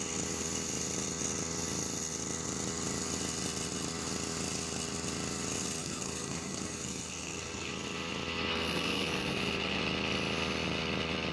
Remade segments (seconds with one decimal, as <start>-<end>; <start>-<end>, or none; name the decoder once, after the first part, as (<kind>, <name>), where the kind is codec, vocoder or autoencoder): 5.8-7.7 (codec, SNAC); 8.5-9.8

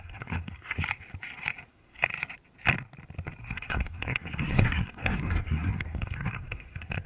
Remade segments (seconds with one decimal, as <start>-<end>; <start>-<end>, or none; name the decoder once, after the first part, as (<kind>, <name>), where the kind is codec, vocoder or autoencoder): 0.0-0.8 (codec, SNAC); 1.7-2.1; 3.4-7.1

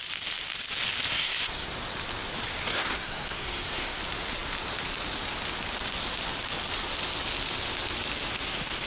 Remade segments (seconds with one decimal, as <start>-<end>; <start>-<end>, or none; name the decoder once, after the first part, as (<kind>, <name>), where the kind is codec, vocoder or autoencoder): 1.1-1.7 (codec, SNAC); 2.7-4.0

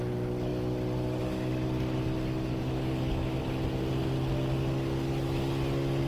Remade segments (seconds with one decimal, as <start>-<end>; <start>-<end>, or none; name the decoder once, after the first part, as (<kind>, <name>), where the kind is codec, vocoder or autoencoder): 2.5-3.4 (codec, DAC)

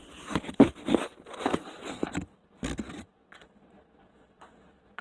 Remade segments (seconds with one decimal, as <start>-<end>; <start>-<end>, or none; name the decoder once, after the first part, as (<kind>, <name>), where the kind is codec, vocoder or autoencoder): 3.0-5.0 (vocoder, Vocos)

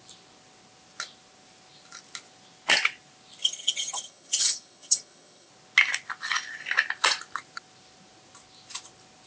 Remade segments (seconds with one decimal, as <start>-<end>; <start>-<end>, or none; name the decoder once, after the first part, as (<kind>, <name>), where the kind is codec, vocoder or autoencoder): 3.4-5.5 (vocoder, HiFi-GAN)

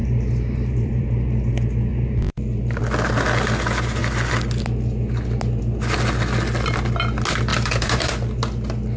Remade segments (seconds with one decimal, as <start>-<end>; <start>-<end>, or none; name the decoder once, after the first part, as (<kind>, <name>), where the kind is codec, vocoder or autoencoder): 0.0-1.5 (vocoder, BigVGAN v2); 1.9-2.8; 7.5-8.1

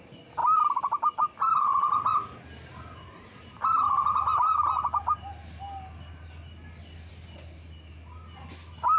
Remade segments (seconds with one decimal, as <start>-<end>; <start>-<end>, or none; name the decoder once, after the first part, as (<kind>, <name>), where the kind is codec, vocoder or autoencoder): none